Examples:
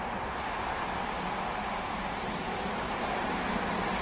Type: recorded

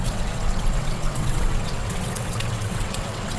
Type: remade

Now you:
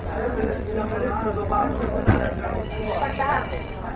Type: remade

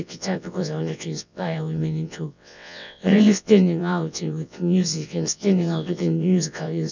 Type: remade